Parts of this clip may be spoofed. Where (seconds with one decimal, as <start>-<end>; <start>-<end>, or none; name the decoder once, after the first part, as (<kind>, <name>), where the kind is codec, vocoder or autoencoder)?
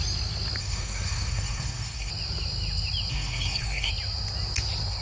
0.6-2.1 (codec, SNAC); 3.1-3.9